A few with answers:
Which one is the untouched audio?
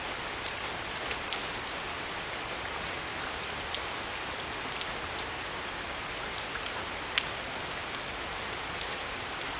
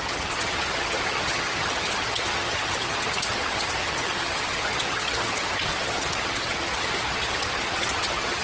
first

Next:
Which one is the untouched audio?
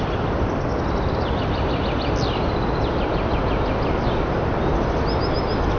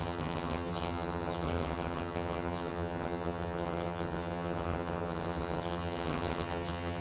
first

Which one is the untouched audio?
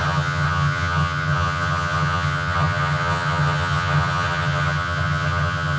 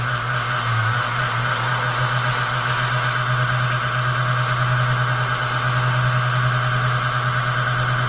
second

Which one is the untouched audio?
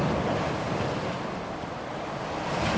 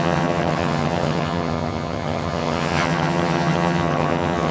first